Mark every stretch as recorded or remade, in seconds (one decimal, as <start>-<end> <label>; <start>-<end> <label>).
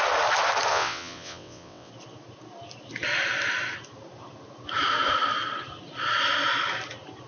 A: 0.0-0.7 recorded; 0.7-1.9 remade; 1.9-7.3 recorded